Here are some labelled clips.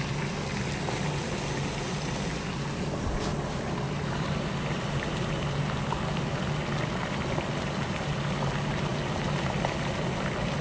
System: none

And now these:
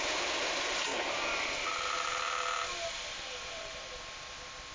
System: none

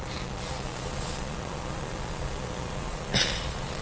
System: vocoder, Vocos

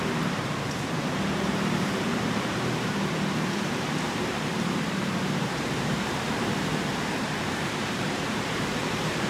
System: vocoder, BigVGAN v2